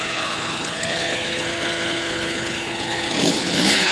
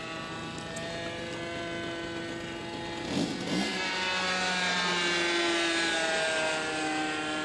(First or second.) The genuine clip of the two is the second